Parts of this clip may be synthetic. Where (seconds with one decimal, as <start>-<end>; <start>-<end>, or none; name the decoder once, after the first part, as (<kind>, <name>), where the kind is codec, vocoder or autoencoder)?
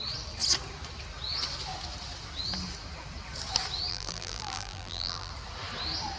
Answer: 3.9-5.3 (vocoder, BigVGAN v2)